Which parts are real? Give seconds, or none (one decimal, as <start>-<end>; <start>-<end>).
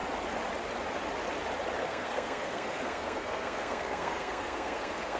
0.0-1.8